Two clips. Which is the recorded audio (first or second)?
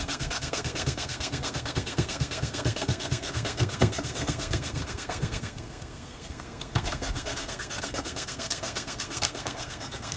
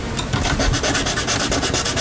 second